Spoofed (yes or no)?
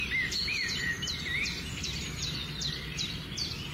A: no